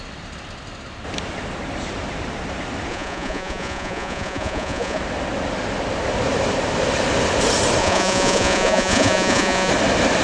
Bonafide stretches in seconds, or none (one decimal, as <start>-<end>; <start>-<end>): 0.0-2.9; 5.0-7.8; 9.7-10.2

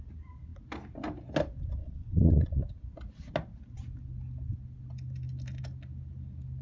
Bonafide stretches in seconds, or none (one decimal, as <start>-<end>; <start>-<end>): 0.0-1.8; 2.6-6.6

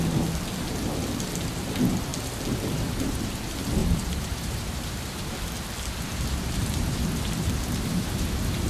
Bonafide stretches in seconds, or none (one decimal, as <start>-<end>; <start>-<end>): 0.0-3.8; 5.3-6.1

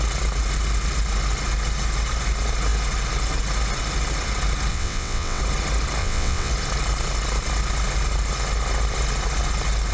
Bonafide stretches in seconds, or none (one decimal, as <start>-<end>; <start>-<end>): 0.0-4.7; 5.4-6.0; 6.5-9.9

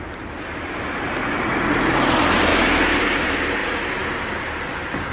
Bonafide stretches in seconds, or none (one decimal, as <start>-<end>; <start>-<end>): 0.0-2.5; 3.0-5.1

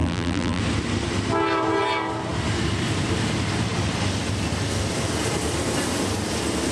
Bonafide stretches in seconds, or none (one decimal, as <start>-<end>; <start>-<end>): 0.6-6.7

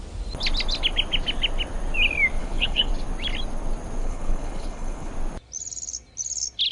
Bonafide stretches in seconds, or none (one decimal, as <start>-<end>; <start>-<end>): 0.0-2.4; 2.9-4.0; 5.1-6.7

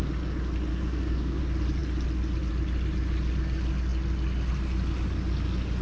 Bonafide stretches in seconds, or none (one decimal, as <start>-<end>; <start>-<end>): 0.0-0.7; 1.4-5.8